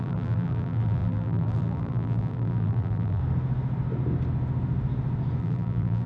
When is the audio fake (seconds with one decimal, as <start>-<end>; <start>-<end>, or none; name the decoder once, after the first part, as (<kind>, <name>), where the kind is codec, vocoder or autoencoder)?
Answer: 0.0-3.2 (vocoder, BigVGAN v2); 5.4-6.1